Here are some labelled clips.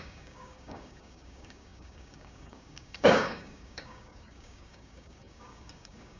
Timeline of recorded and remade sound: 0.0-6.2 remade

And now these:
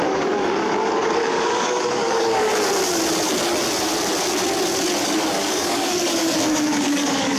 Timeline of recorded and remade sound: 0.0-2.5 remade; 2.5-5.0 recorded; 5.0-7.4 remade

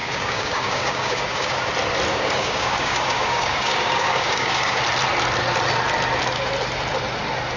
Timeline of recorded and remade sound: 0.0-1.7 remade; 1.7-2.1 recorded; 2.1-4.8 remade; 4.8-7.6 recorded

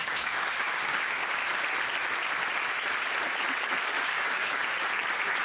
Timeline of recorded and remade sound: 0.0-1.4 remade; 1.4-3.8 recorded; 3.8-4.6 remade; 4.6-5.4 recorded